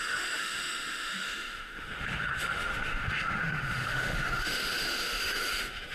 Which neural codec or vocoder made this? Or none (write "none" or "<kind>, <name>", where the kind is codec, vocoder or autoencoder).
autoencoder, DAC-VAE